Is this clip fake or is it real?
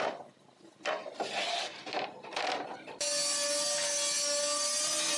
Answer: real